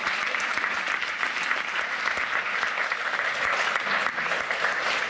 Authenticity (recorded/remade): recorded